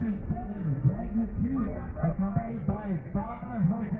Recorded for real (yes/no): no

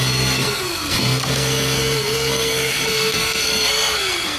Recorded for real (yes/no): no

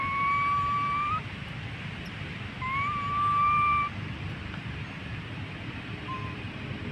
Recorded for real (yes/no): yes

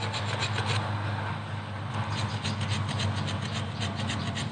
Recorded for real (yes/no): yes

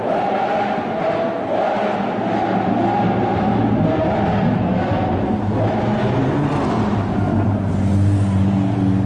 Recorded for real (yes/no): yes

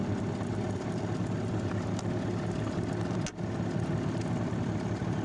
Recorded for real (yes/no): yes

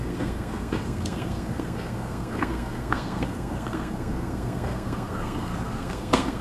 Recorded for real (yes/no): no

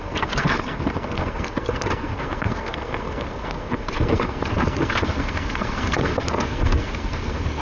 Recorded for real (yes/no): no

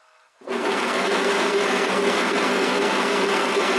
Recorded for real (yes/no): no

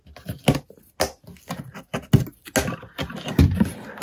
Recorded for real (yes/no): yes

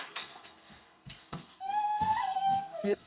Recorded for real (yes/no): no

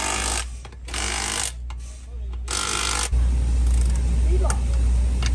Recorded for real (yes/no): yes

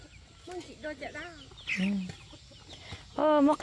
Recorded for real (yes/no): yes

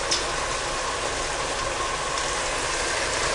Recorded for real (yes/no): yes